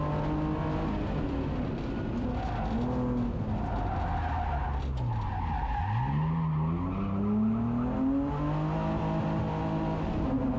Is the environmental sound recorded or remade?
recorded